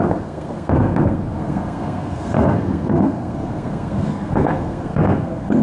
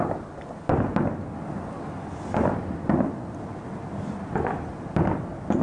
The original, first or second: second